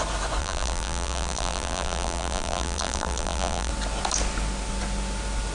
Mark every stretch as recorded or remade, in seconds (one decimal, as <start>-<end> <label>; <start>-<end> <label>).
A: 0.0-0.4 recorded; 0.4-3.7 remade; 3.7-5.5 recorded

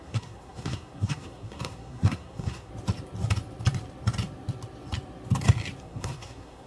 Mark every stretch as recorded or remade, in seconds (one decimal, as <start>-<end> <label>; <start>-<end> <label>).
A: 0.0-2.7 remade; 2.7-5.8 recorded; 5.8-6.7 remade

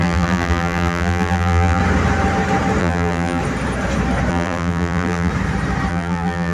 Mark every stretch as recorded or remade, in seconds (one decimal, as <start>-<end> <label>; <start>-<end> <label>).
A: 0.0-1.8 remade; 1.8-2.8 recorded; 2.8-3.4 remade; 3.4-4.3 recorded; 4.3-5.3 remade; 5.3-5.9 recorded; 5.9-6.5 remade

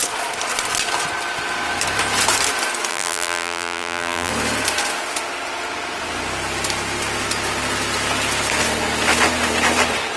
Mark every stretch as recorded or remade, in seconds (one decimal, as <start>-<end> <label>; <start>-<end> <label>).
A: 0.0-2.9 recorded; 2.9-4.3 remade; 4.3-10.2 recorded